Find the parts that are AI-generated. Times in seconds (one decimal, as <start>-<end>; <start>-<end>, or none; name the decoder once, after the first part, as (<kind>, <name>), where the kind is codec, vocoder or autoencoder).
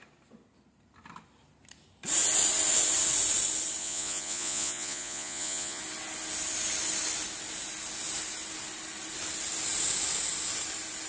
3.8-5.8 (vocoder, Vocos)